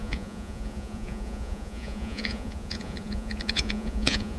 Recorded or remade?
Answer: remade